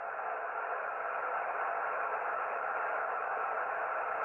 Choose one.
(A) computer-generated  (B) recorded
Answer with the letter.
B